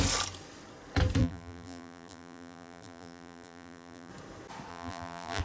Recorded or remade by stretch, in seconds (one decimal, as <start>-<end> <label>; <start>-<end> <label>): 0.0-1.2 recorded; 1.2-4.1 remade; 4.1-4.7 recorded; 4.7-5.4 remade